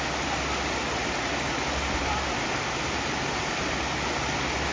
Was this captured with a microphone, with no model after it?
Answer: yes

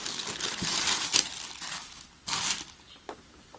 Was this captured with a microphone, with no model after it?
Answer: yes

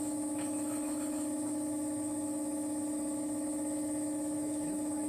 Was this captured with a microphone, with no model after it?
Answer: no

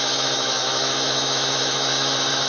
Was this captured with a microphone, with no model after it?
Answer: no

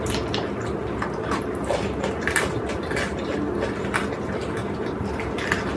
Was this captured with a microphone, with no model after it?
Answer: yes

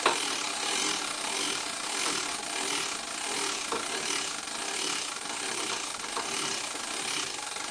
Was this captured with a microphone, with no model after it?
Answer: yes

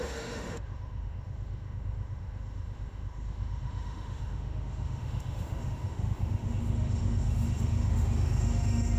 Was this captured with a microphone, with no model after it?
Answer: no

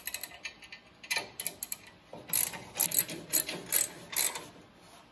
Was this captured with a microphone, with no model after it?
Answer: yes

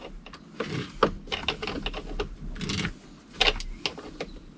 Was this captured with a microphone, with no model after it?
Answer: yes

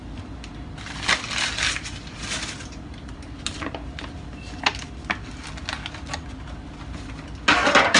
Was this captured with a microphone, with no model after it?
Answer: yes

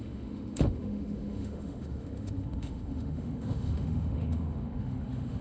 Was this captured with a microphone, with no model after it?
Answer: no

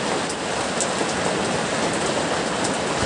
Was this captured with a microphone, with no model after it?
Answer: yes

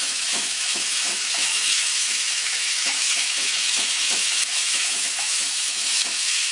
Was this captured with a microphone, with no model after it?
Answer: no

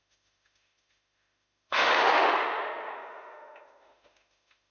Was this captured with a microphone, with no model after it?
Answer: no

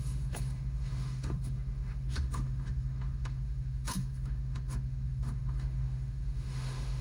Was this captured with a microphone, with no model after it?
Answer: no